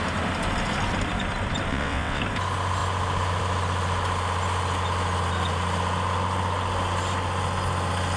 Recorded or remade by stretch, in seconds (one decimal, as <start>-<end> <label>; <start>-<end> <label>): 0.0-1.7 recorded; 1.7-2.2 remade; 2.2-8.2 recorded